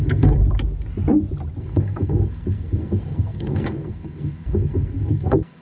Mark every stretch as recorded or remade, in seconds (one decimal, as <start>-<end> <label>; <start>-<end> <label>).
0.0-0.4 remade; 0.4-1.6 recorded; 1.6-5.6 remade